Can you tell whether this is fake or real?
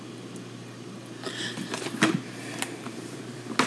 real